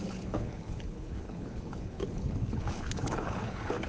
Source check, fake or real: fake